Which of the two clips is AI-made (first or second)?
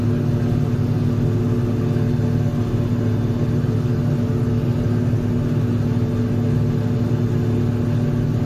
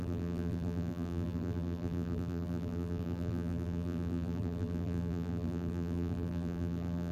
second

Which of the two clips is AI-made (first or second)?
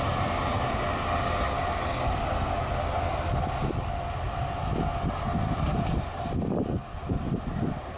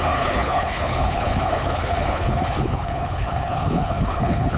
second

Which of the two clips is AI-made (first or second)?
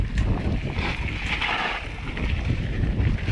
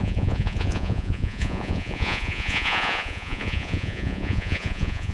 second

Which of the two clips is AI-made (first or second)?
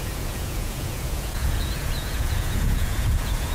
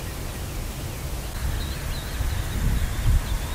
first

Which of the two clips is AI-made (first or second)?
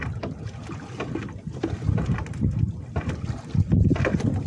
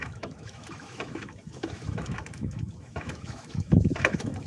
second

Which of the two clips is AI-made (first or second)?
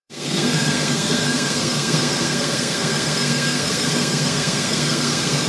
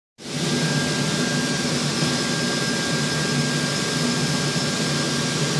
first